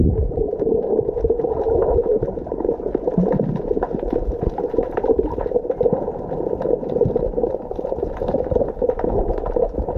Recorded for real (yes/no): no